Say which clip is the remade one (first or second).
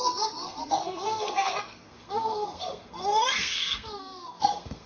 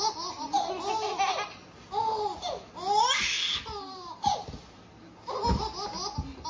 first